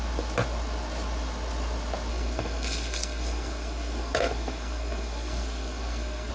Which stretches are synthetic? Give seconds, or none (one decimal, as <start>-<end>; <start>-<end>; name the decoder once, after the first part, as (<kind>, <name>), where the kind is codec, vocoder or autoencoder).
2.1-6.3 (codec, SNAC)